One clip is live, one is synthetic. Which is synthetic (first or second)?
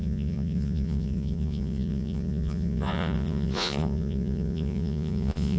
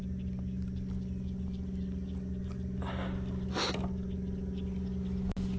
first